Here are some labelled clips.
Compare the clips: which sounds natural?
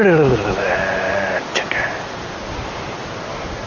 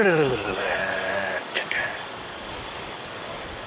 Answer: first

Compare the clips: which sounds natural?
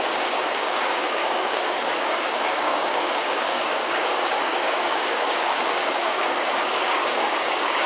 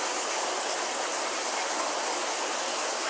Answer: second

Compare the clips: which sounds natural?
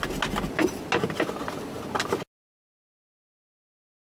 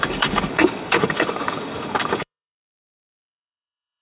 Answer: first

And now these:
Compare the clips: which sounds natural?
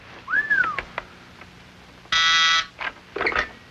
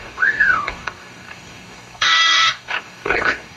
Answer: first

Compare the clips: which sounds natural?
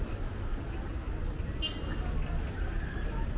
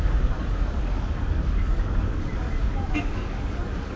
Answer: first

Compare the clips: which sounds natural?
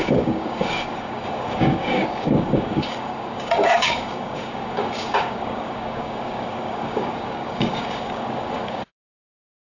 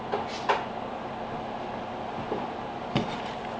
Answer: second